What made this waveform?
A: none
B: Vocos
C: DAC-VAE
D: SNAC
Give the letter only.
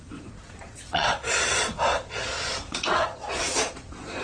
B